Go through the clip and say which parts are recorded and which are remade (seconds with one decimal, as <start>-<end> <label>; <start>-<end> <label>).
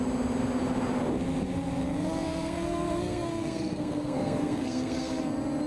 0.0-1.8 recorded; 1.8-5.2 remade; 5.2-5.7 recorded